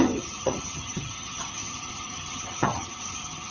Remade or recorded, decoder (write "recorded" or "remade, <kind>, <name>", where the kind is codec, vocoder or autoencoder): remade, vocoder, HiFi-GAN